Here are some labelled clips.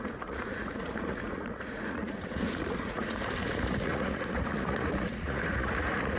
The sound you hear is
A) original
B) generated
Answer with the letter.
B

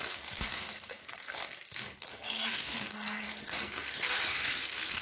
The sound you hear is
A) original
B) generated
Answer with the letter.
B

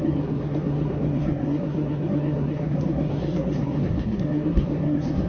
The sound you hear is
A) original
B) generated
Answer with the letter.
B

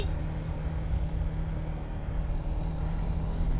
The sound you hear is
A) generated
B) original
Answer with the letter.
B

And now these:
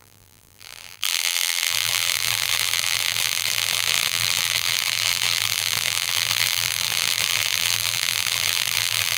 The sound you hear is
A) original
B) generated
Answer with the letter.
B